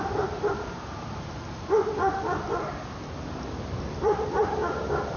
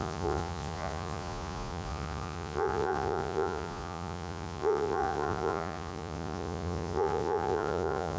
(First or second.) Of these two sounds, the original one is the first